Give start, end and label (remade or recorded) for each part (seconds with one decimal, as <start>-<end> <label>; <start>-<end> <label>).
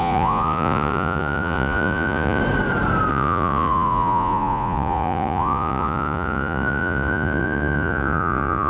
0.0-2.4 remade; 2.4-3.1 recorded; 3.1-8.7 remade